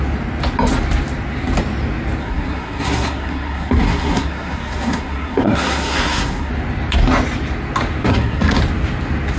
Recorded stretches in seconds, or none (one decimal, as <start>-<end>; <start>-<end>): 0.0-2.2; 6.5-8.1; 8.6-9.4